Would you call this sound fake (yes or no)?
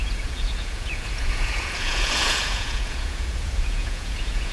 yes